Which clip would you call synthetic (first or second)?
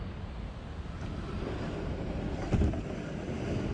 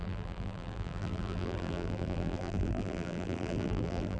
second